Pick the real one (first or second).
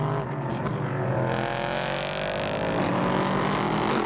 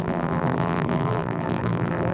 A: first